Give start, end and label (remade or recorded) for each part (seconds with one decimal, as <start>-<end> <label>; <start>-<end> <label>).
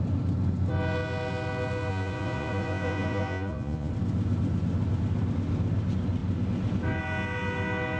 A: 0.0-1.9 recorded; 1.9-3.9 remade; 3.9-8.0 recorded